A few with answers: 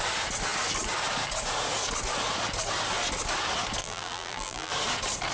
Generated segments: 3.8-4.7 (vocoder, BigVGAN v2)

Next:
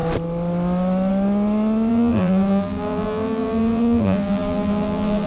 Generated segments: 1.9-5.3 (vocoder, BigVGAN v2)